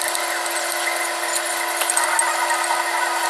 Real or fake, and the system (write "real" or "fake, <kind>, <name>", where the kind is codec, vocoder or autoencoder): real